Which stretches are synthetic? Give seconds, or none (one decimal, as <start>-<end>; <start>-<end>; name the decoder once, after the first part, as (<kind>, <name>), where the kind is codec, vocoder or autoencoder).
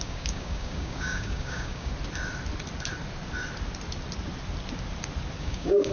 0.0-1.9 (codec, DAC); 5.4-5.9